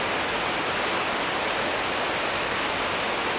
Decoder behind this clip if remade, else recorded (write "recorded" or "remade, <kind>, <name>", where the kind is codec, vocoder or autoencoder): recorded